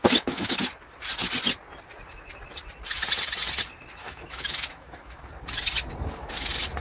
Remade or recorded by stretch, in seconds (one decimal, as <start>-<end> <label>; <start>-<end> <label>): 0.0-0.6 remade; 0.6-4.0 recorded; 4.0-5.3 remade; 5.3-6.8 recorded